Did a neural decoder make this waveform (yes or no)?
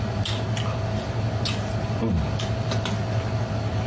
no